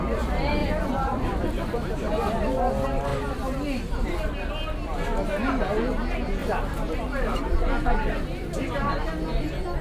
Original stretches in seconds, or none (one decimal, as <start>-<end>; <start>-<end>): 0.0-0.6; 2.1-6.4; 7.4-9.8